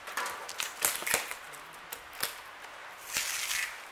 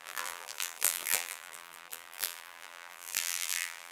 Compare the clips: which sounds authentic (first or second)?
first